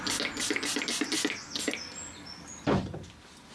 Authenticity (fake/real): real